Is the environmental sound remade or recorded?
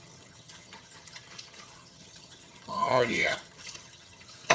remade